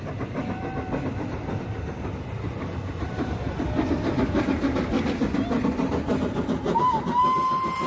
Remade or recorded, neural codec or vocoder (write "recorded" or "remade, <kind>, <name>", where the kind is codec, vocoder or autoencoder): recorded